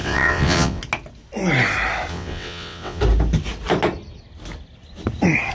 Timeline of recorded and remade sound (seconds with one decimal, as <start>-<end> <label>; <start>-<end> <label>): 0.0-0.8 remade; 0.8-2.1 recorded; 2.1-3.0 remade; 3.0-5.5 recorded